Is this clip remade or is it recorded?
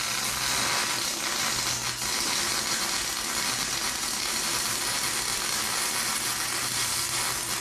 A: recorded